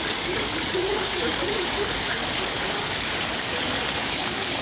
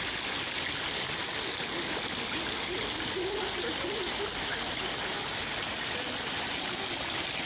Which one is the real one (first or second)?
second